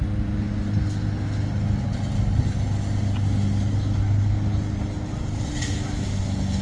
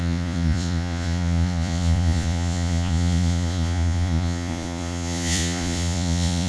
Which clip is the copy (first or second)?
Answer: second